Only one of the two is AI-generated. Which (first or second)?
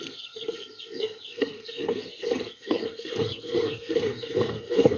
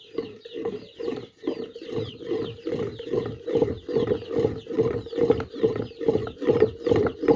first